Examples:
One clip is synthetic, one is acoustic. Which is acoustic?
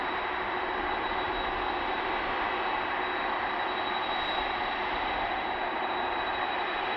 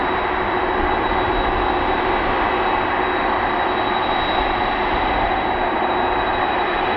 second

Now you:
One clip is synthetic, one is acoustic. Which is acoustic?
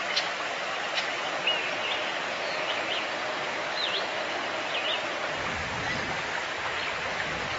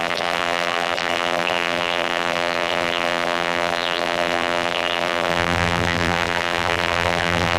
first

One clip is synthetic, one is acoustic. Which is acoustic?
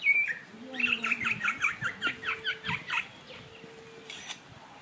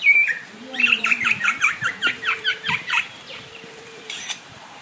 first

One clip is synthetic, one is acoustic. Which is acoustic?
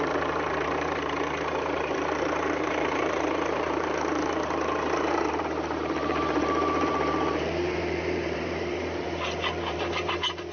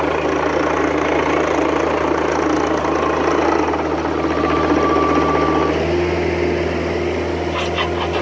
second